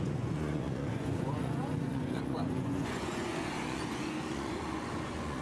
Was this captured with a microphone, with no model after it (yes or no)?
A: no